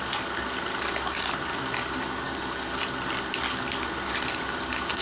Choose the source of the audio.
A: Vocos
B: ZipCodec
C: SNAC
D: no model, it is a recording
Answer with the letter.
D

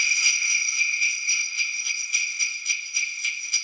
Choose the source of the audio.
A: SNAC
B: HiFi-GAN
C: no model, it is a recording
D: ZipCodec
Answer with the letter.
D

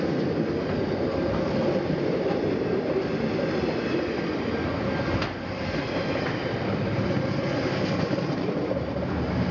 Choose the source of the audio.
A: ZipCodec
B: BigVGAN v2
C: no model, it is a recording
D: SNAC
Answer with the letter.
C